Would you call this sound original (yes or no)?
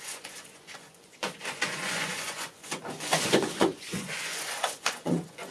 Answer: no